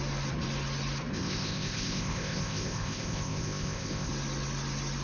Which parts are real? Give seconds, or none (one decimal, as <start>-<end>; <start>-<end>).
0.0-1.1; 4.1-5.0